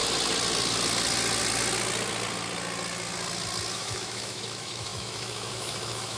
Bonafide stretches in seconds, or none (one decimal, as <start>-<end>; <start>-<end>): 0.0-3.7